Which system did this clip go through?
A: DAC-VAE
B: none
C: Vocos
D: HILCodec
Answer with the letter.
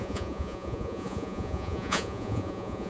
C